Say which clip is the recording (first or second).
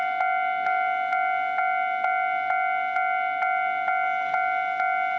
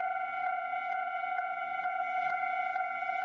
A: first